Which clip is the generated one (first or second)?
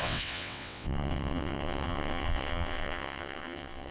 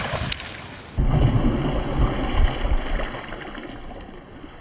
first